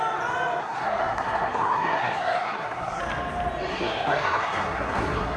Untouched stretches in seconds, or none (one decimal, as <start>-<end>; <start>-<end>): 0.0-0.6; 3.0-3.7